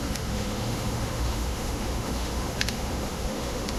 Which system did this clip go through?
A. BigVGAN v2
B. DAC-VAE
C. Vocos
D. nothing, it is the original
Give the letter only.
B